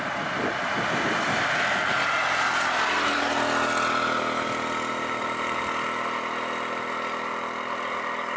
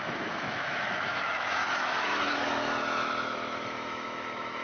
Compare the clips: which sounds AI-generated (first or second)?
second